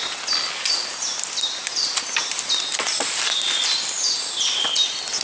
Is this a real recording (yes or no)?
yes